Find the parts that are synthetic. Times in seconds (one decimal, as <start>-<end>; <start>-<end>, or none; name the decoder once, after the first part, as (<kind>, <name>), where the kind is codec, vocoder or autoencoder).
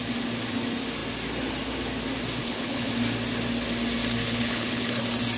2.4-2.9 (codec, HILCodec); 4.2-5.0